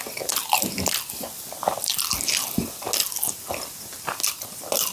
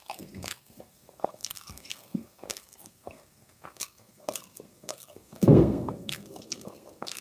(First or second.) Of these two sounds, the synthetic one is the second